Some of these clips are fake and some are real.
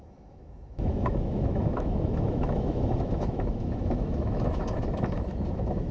fake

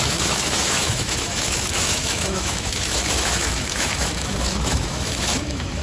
fake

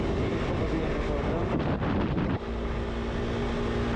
real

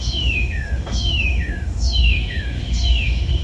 fake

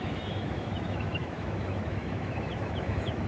fake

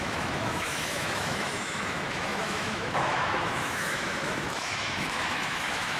fake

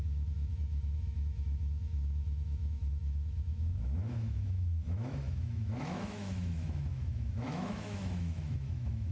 fake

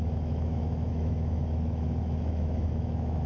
fake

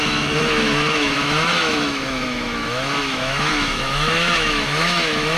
fake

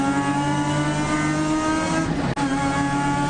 real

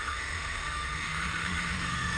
fake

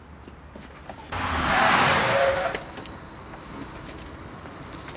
real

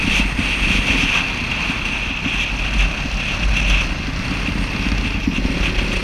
real